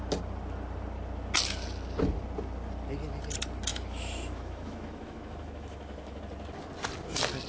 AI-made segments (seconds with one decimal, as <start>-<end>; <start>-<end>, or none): 3.7-6.2